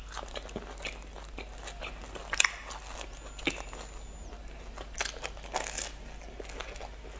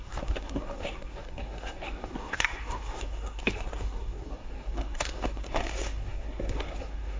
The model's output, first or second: second